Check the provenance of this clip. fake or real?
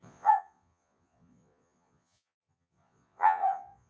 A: fake